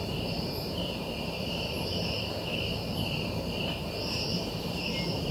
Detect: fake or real fake